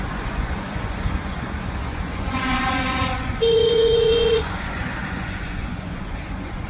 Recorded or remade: remade